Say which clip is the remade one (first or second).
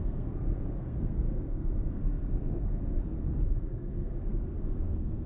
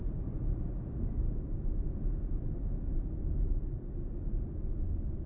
first